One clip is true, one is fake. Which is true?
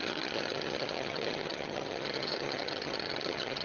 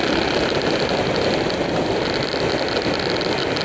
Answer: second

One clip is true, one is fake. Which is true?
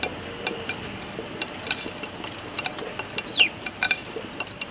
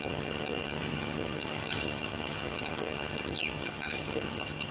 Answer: first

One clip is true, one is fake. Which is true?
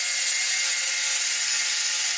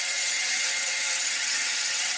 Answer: first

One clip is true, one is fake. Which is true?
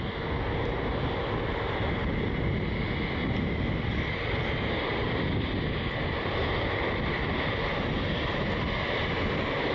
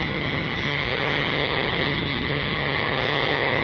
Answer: first